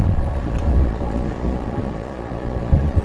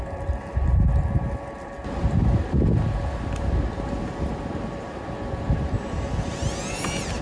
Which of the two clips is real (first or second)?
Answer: second